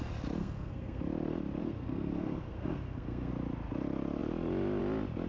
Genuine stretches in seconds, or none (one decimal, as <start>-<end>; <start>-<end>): 0.0-0.4; 1.0-1.6; 3.3-5.3